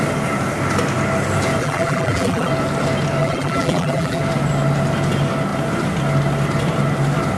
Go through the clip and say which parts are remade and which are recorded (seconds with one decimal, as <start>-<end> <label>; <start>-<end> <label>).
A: 0.0-1.6 recorded; 1.6-2.5 remade; 2.5-3.2 recorded; 3.2-4.2 remade; 4.2-7.4 recorded